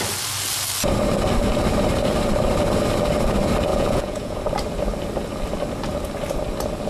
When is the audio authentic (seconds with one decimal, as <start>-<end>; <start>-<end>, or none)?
0.0-3.7; 4.4-6.9